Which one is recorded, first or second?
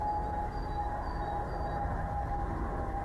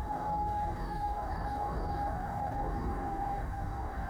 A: first